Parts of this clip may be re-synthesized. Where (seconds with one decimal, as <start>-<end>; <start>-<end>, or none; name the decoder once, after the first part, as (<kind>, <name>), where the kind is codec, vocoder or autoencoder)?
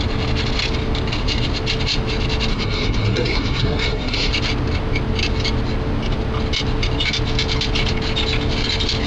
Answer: 2.5-4.3 (codec, SNAC)